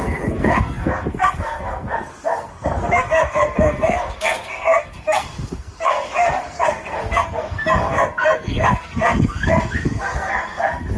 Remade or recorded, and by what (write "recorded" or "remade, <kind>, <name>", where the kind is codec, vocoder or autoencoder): remade, codec, SNAC